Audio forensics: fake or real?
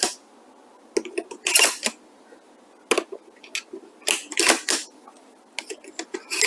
real